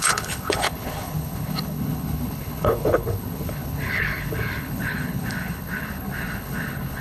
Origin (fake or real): fake